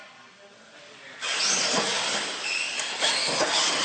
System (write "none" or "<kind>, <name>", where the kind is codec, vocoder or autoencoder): none